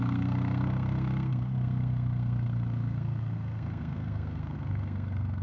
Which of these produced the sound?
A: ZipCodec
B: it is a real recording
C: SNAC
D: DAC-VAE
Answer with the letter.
C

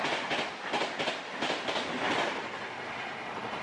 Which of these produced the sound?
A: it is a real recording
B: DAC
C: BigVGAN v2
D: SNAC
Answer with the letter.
A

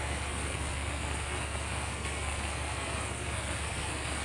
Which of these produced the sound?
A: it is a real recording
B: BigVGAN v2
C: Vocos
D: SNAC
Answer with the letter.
D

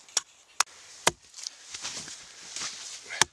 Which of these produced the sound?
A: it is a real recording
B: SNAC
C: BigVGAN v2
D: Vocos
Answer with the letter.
A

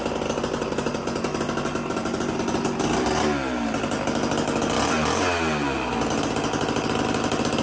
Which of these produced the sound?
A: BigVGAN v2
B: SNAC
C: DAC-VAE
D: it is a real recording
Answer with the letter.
D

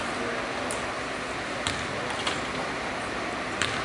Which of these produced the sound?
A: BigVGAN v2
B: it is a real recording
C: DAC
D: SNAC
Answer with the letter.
B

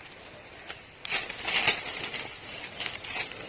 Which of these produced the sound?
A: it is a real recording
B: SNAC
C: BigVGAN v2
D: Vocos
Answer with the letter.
A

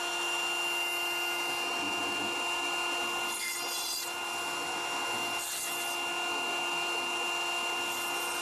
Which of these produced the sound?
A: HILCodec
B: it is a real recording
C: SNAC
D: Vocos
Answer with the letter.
B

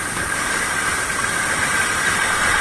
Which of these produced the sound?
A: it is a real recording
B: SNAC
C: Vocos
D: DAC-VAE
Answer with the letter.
A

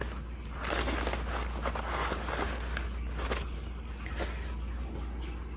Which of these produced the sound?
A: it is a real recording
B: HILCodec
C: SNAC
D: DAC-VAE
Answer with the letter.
A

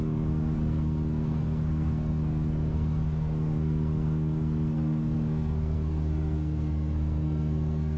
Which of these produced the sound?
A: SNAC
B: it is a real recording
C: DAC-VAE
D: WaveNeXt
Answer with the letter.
A